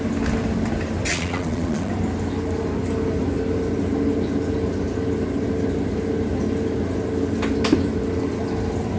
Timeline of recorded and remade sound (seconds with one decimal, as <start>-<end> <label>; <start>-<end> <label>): 0.0-1.1 recorded; 1.1-1.9 remade; 1.9-9.0 recorded